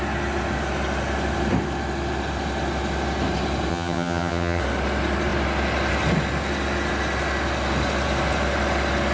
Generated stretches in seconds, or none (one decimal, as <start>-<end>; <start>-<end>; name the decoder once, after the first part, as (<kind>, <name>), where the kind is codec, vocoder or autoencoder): 3.7-4.6 (vocoder, HiFi-GAN)